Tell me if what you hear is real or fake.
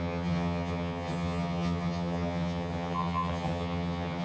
fake